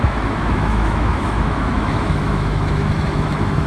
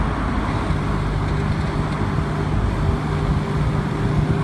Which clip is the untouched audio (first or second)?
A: second